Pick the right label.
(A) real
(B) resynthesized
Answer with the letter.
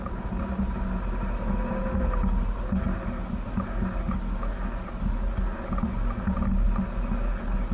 A